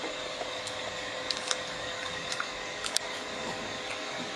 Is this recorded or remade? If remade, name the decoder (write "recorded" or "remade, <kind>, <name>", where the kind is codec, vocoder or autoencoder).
remade, codec, DAC